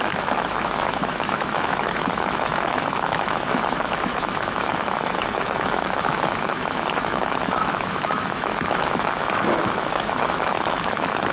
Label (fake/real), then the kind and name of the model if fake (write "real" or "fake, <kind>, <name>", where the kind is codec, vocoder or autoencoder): fake, autoencoder, DAC-VAE